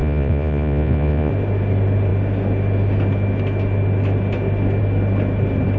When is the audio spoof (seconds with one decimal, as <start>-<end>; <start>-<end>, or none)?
0.0-1.3